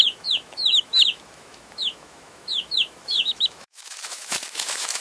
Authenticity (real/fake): fake